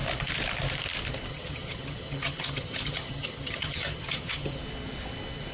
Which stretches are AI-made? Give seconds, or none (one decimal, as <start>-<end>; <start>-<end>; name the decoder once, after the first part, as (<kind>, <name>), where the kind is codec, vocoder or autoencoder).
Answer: 1.3-4.6 (vocoder, HiFi-GAN)